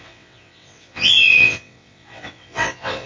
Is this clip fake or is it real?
fake